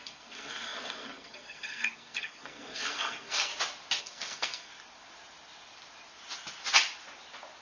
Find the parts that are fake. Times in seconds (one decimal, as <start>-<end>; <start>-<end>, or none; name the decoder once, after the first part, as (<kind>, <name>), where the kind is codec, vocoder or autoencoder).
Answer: 0.0-3.5 (codec, SNAC); 4.0-4.7